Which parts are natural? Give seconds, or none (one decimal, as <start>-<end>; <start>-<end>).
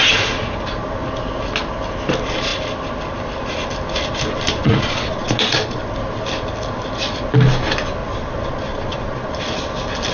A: 0.0-4.6; 5.8-8.0; 9.3-10.1